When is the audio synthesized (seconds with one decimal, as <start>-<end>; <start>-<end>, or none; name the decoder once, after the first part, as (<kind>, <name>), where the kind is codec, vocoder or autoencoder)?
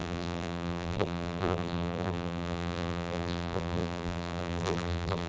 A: 0.0-5.3 (vocoder, BigVGAN v2)